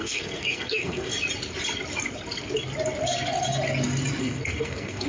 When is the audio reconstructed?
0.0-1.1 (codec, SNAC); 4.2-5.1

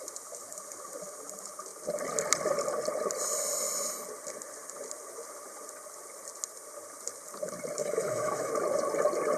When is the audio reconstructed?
7.8-8.5 (autoencoder, DAC-VAE)

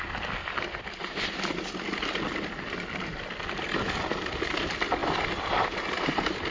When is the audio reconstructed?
none

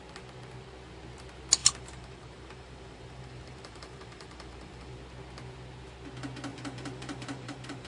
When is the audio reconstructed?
1.6-5.0 (vocoder, BigVGAN v2); 6.5-7.9